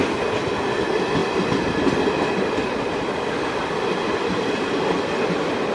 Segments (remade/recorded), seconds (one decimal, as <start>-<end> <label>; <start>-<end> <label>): 0.0-1.2 recorded; 1.2-3.9 remade; 3.9-5.7 recorded